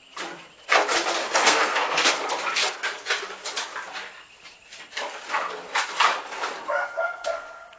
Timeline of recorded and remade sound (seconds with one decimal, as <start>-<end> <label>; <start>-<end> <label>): 0.0-1.2 recorded; 1.2-2.1 remade; 2.1-6.8 recorded; 6.8-7.8 remade